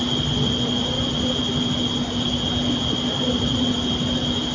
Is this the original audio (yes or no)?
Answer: yes